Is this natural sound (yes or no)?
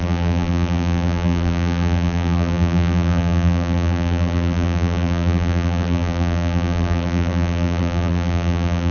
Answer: no